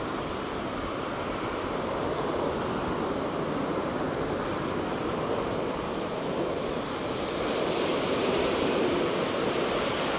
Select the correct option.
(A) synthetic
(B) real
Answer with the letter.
A